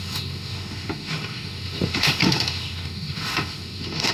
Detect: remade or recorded remade